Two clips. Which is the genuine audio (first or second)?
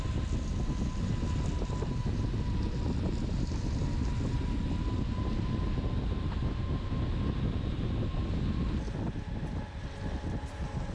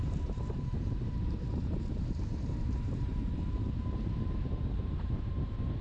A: first